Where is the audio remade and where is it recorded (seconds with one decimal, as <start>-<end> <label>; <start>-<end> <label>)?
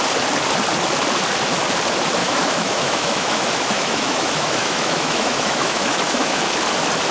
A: 0.0-2.2 recorded; 2.2-6.4 remade; 6.4-7.1 recorded